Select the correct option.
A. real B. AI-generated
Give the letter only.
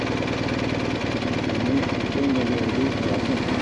A